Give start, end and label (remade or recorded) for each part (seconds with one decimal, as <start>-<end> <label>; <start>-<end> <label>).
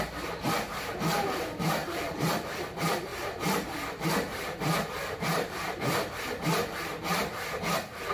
0.0-1.8 recorded; 1.8-2.3 remade; 2.3-3.1 recorded; 3.1-7.6 remade; 7.6-8.1 recorded